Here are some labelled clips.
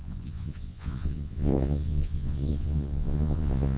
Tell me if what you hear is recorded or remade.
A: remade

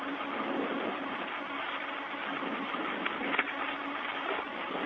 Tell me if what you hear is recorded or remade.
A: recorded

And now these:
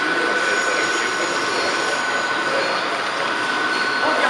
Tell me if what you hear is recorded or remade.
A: recorded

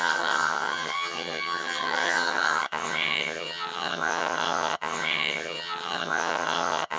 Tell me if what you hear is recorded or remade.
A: remade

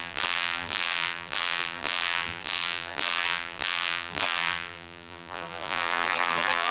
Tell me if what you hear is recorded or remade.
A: remade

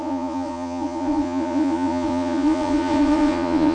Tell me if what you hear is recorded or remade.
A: remade